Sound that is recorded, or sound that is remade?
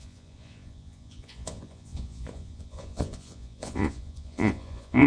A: remade